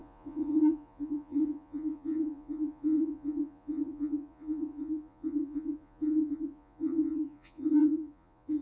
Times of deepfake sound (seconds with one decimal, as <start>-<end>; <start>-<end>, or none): 0.0-8.6